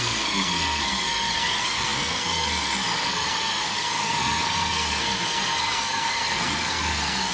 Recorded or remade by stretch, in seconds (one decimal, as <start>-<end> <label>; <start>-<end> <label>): 0.0-7.3 remade